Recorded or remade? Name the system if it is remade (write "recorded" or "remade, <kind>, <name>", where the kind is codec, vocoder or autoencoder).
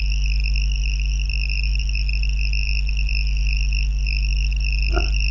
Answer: recorded